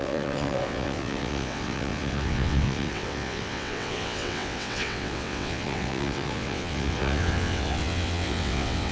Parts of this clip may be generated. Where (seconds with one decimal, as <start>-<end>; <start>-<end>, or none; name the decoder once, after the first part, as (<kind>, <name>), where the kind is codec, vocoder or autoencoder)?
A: 0.0-8.9 (vocoder, WaveNeXt)